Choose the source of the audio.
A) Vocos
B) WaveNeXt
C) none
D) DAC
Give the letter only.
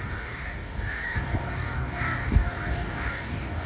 D